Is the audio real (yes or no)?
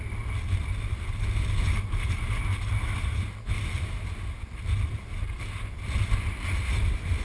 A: yes